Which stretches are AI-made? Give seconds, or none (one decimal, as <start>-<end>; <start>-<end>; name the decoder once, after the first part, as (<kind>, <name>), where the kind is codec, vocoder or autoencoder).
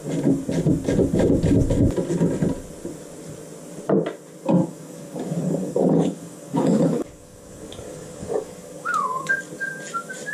4.6-9.4 (codec, DAC)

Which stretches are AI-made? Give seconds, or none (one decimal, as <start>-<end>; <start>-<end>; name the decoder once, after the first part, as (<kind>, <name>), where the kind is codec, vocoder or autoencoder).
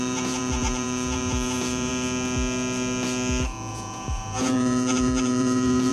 0.0-1.9 (vocoder, Vocos); 3.7-5.9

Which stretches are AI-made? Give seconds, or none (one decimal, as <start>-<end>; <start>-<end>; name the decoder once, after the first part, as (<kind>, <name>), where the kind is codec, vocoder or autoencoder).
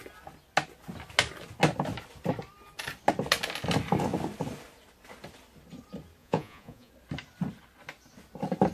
6.2-6.9 (vocoder, Vocos)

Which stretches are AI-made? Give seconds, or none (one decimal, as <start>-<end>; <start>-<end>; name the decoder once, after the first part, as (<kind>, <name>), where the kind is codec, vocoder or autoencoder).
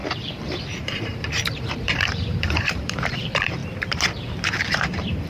0.0-3.6 (vocoder, BigVGAN v2); 4.7-5.3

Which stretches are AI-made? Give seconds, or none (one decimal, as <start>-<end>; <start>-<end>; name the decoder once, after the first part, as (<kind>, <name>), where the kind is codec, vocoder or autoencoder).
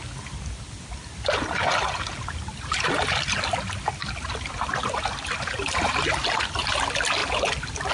none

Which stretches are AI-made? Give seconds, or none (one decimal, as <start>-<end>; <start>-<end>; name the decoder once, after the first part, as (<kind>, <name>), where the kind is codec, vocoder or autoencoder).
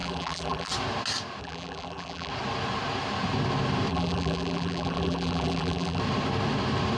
0.0-0.7 (vocoder, BigVGAN v2); 1.4-2.3; 3.9-6.0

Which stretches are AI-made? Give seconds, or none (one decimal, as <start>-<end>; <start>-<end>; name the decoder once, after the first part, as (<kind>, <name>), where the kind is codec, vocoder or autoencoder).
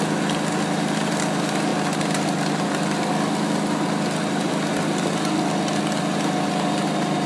none